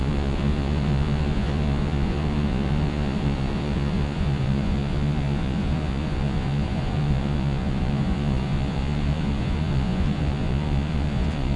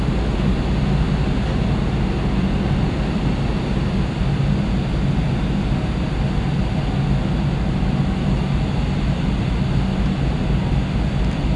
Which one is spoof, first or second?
first